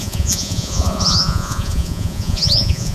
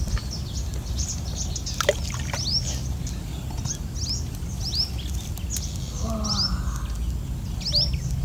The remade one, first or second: first